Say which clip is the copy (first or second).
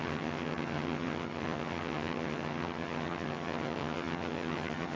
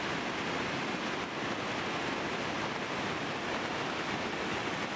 first